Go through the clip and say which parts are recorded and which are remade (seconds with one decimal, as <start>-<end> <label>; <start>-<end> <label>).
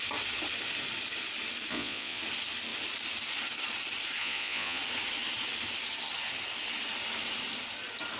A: 0.0-1.7 recorded; 1.7-2.2 remade; 2.2-4.2 recorded; 4.2-4.8 remade; 4.8-8.2 recorded